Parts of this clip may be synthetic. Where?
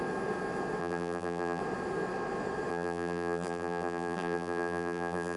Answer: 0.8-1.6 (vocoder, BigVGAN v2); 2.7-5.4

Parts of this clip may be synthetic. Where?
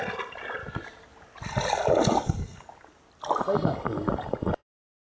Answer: none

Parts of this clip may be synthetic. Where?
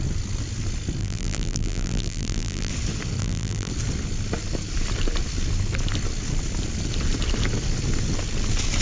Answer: 1.0-2.7 (vocoder, BigVGAN v2); 3.2-3.7